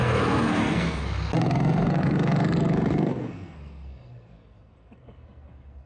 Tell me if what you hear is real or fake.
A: fake